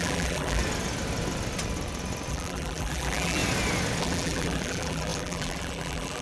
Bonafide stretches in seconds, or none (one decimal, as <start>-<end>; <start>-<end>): 0.6-2.3; 3.4-4.0